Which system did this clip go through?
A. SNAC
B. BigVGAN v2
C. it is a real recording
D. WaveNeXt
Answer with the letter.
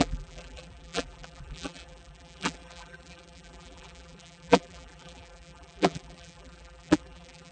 B